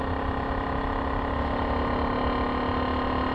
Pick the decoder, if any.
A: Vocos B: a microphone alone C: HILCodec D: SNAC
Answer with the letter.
B